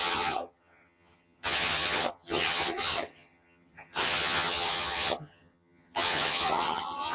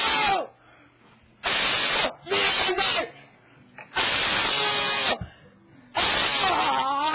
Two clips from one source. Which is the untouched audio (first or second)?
second